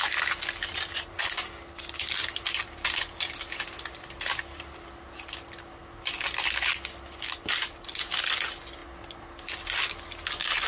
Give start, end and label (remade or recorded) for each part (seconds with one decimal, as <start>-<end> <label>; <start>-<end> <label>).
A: 0.0-10.7 recorded